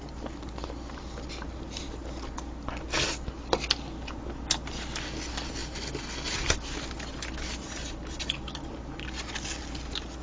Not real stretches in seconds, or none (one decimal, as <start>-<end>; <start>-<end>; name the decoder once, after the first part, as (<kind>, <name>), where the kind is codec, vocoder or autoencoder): none